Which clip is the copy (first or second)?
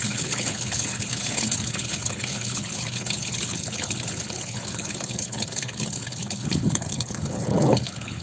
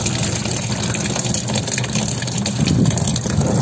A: first